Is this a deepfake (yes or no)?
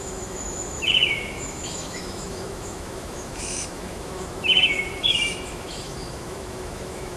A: yes